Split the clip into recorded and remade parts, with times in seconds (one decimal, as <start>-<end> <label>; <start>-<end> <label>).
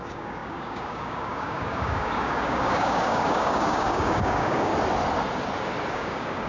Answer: 0.0-4.7 remade; 4.7-5.9 recorded; 5.9-6.5 remade